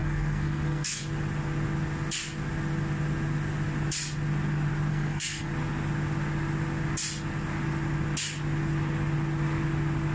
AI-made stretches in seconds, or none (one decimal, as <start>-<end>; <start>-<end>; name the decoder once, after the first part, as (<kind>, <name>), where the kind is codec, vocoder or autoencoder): 0.0-1.0 (codec, SNAC); 4.9-5.5